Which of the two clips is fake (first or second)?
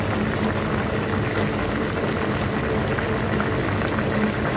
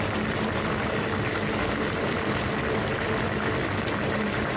second